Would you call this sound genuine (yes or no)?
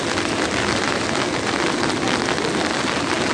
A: yes